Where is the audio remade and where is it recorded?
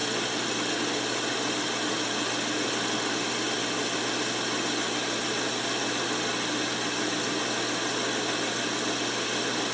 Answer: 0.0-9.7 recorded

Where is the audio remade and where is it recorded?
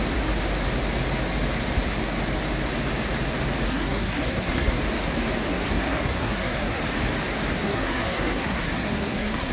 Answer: 0.0-3.7 recorded; 3.7-4.8 remade; 4.8-5.5 recorded; 5.5-6.8 remade; 6.8-7.5 recorded; 7.5-9.5 remade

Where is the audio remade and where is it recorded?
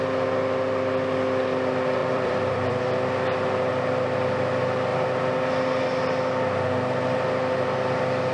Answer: 0.0-2.0 recorded; 2.0-2.8 remade; 2.8-8.3 recorded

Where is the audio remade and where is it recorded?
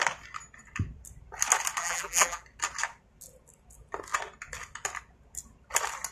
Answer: 0.0-1.8 recorded; 1.8-2.4 remade; 2.4-6.1 recorded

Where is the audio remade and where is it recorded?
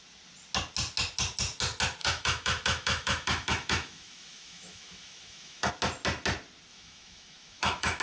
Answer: 0.0-2.0 recorded; 2.0-5.7 remade; 5.7-6.7 recorded; 6.7-8.0 remade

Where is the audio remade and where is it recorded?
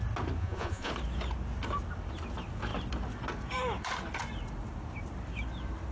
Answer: 0.0-0.4 recorded; 0.4-0.9 remade; 0.9-5.9 recorded